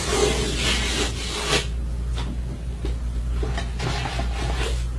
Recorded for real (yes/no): yes